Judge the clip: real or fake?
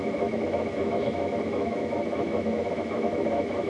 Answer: fake